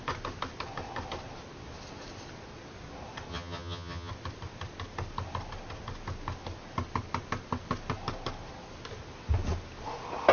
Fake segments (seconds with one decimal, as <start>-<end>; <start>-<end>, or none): 3.3-4.1